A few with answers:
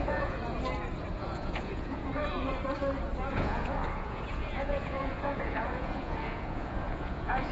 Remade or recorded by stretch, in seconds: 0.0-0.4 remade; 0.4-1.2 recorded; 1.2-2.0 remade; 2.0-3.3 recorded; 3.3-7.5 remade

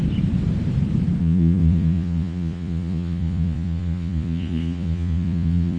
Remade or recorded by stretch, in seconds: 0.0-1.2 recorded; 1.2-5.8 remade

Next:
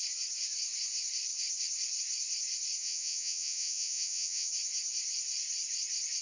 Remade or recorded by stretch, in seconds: 0.0-2.8 recorded; 2.8-4.5 remade; 4.5-6.2 recorded